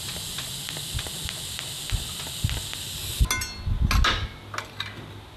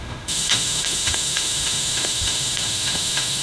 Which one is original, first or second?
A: first